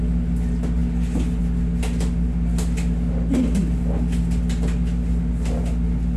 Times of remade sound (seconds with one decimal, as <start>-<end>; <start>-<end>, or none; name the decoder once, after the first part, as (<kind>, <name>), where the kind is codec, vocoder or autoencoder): none